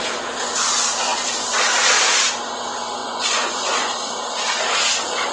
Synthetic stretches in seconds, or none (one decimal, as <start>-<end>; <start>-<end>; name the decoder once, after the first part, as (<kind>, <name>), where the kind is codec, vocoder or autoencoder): 3.0-4.0 (vocoder, Vocos)

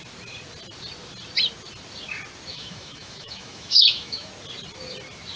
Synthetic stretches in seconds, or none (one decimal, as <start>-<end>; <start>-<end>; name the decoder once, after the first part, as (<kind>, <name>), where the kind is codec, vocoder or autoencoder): 2.5-4.3 (autoencoder, DAC-VAE)

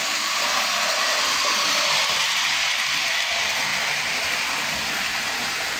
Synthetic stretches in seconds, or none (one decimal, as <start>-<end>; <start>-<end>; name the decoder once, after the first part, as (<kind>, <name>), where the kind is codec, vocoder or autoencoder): 3.7-4.9 (vocoder, BigVGAN v2)

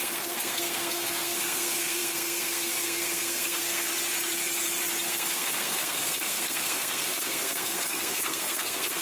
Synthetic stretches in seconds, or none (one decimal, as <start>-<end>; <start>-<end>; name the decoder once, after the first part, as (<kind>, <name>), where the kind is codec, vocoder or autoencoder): 0.0-3.9 (codec, SNAC); 5.1-9.0

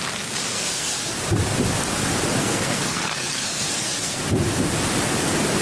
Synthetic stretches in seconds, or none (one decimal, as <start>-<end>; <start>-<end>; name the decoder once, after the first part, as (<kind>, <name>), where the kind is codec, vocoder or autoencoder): 0.5-1.1 (codec, SNAC); 2.4-4.2

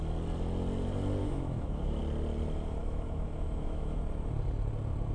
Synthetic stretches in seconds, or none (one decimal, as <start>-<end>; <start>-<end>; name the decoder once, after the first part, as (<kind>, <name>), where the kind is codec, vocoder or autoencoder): 1.2-2.0 (autoencoder, DAC-VAE); 2.8-4.0